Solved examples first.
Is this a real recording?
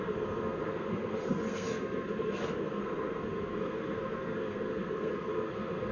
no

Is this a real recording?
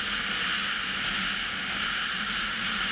yes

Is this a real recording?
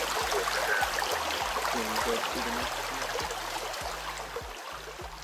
yes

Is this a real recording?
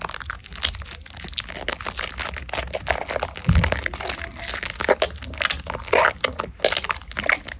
yes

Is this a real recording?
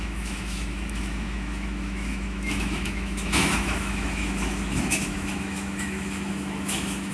no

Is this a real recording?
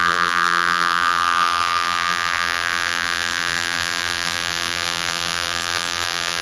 no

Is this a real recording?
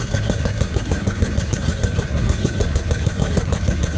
no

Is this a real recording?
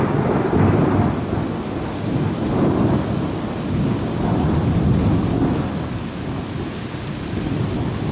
yes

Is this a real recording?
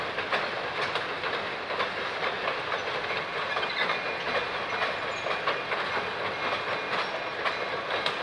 yes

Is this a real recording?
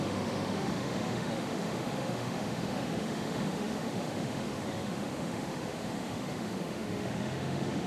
no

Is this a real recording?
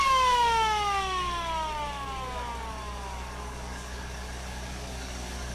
no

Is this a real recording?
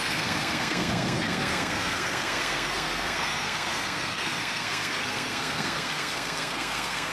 no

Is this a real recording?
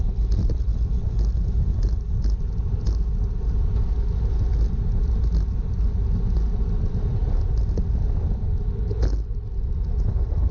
yes